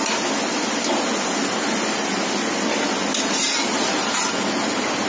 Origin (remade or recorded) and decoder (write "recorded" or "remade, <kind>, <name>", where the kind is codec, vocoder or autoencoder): recorded